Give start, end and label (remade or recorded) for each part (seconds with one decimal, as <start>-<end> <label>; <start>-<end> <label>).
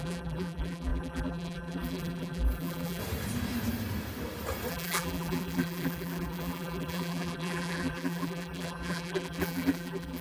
0.0-3.0 remade; 3.0-4.7 recorded; 4.7-10.2 remade